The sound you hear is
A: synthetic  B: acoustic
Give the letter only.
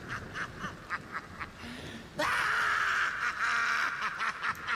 B